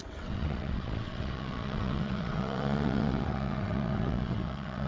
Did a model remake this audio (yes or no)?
yes